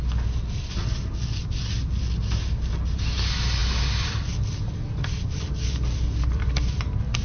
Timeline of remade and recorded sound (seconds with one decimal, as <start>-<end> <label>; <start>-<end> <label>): 0.0-1.4 recorded; 1.4-2.2 remade; 2.2-3.6 recorded; 3.6-6.8 remade; 6.8-7.2 recorded